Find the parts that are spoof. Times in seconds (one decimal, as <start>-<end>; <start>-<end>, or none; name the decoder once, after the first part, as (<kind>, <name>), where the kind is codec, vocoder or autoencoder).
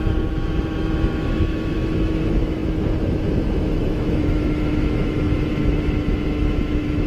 0.0-7.1 (autoencoder, DAC-VAE)